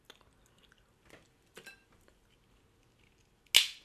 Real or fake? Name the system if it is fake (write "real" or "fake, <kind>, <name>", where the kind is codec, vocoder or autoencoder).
real